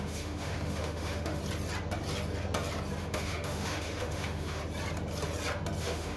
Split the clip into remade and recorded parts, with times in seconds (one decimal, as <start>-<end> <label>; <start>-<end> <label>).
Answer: 0.0-1.4 remade; 1.4-3.0 recorded; 3.0-4.6 remade; 4.6-5.8 recorded; 5.8-6.2 remade